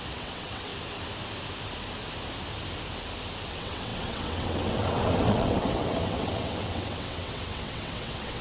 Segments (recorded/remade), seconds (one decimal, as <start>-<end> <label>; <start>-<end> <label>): 0.0-0.7 remade; 0.7-3.5 recorded; 3.5-8.4 remade